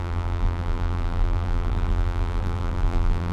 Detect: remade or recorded remade